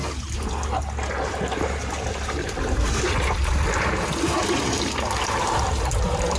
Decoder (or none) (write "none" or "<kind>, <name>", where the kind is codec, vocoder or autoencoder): none